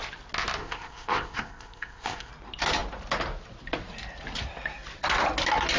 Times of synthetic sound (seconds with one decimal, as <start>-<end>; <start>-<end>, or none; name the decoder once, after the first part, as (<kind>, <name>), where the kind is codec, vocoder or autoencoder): 0.6-2.3 (codec, ZipCodec)